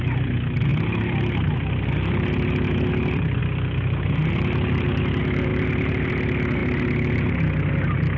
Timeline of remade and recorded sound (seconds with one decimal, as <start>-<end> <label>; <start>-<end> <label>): 0.0-8.2 recorded